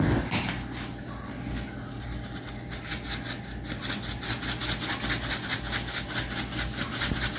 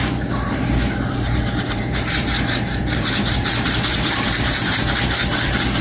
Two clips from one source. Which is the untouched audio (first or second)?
first